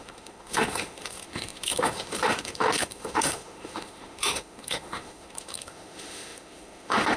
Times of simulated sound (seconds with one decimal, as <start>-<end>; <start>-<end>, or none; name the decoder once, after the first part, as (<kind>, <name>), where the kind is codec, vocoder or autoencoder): 0.0-7.2 (autoencoder, DAC-VAE)